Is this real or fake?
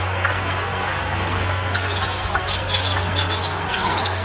fake